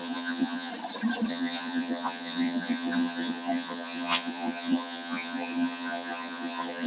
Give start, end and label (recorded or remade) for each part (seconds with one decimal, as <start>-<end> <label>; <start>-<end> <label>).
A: 0.0-0.7 remade; 0.7-1.3 recorded; 1.3-6.9 remade